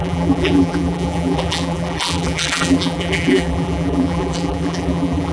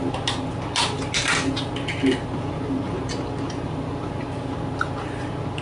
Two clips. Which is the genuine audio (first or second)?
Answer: second